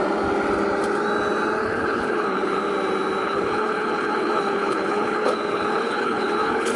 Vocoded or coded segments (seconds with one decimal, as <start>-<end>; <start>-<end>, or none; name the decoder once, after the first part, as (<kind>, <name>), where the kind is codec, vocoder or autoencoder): 1.6-2.6 (codec, HILCodec); 3.2-6.8